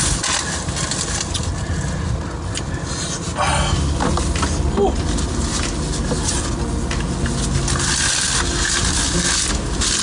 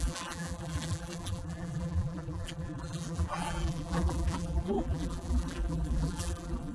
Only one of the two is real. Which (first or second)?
first